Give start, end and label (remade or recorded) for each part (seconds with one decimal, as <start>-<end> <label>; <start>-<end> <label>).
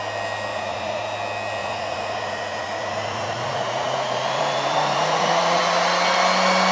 0.0-0.5 recorded; 0.5-1.0 remade; 1.0-1.6 recorded; 1.6-5.6 remade; 5.6-6.7 recorded